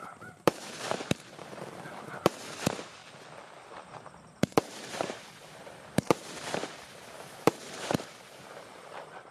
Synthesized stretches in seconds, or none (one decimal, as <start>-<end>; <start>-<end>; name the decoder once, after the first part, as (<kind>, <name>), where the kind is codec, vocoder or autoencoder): 0.0-3.0 (vocoder, BigVGAN v2); 3.7-9.3